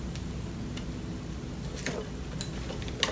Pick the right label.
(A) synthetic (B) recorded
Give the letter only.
B